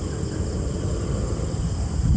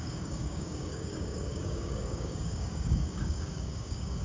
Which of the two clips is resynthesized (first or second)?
second